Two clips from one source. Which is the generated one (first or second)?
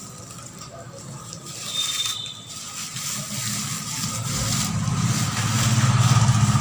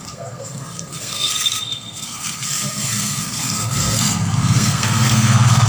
second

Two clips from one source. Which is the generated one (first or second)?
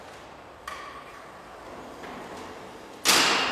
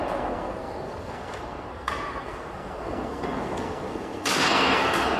second